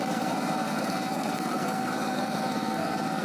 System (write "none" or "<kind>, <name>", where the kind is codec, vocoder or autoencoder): codec, SNAC